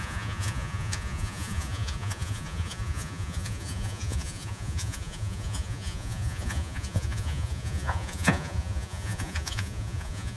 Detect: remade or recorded remade